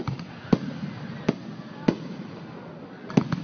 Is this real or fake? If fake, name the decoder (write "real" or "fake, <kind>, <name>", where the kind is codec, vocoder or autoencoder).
real